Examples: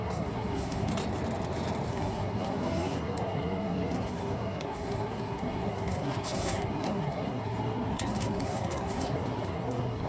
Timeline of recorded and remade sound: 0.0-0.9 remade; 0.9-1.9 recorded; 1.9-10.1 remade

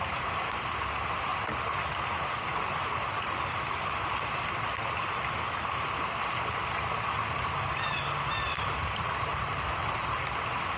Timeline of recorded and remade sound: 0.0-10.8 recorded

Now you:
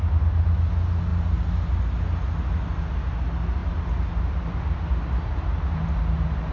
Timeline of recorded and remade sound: 0.0-6.5 recorded

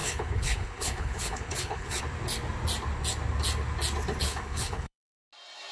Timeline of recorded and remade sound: 0.0-2.0 remade; 2.0-4.2 recorded; 4.2-5.2 remade; 5.2-5.7 recorded